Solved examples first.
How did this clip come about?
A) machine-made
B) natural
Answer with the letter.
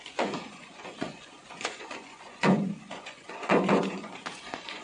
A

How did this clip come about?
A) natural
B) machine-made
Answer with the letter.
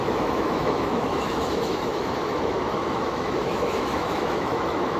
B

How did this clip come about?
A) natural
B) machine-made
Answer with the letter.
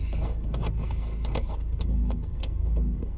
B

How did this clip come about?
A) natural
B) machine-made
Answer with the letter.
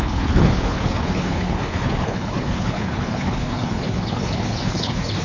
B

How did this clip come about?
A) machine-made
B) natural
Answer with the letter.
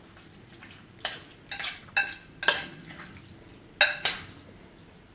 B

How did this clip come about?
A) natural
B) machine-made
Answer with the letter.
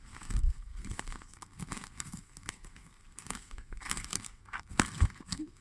B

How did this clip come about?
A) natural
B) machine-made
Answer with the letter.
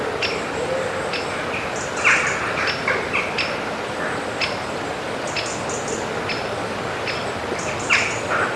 A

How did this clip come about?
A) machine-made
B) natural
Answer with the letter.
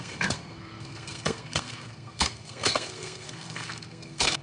A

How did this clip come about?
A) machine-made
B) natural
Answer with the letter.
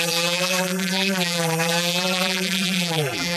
A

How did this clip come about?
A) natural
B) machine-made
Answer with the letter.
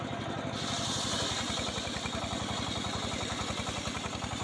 A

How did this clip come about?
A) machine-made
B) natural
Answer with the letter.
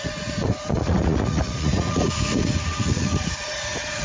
A